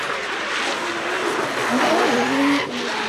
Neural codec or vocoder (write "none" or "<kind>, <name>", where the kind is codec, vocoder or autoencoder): none